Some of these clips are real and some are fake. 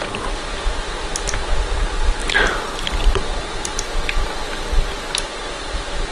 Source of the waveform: real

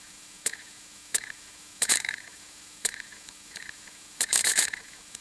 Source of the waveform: fake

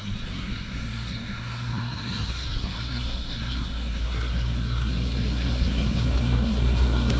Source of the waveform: fake